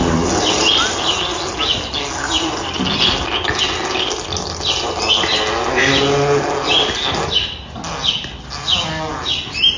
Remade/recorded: recorded